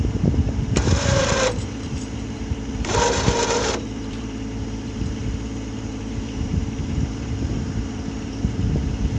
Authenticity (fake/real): fake